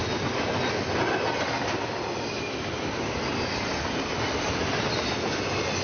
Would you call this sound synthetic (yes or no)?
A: no